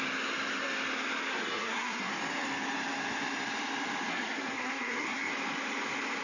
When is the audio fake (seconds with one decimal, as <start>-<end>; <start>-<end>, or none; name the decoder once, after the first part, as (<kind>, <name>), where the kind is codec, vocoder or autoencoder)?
1.3-2.1 (codec, SNAC); 4.1-5.3